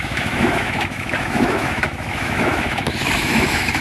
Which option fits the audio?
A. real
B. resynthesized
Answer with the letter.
B